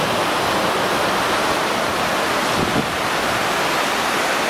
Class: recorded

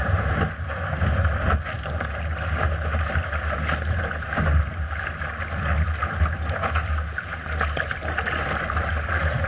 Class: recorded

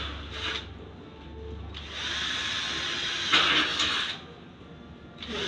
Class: recorded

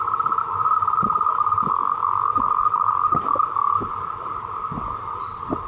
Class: recorded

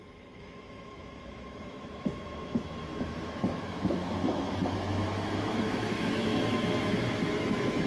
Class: remade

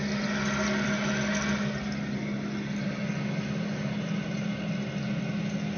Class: recorded